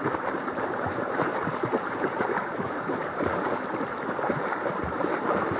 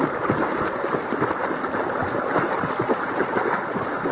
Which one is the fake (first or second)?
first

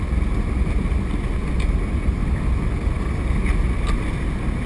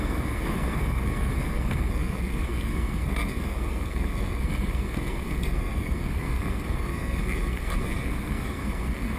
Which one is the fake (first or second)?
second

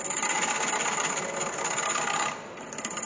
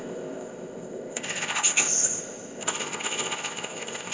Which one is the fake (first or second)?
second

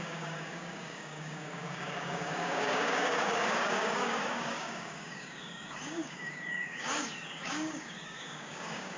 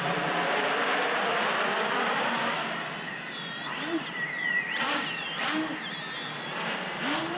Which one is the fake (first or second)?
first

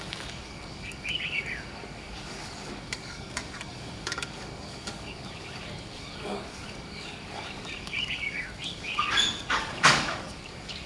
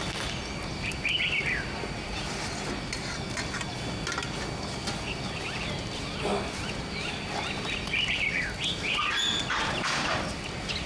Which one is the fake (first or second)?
first